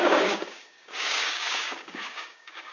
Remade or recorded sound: remade